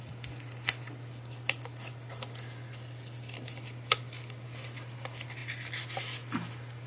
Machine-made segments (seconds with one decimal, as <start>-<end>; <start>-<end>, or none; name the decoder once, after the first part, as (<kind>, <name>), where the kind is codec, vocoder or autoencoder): none